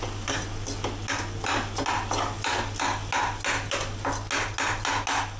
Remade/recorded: recorded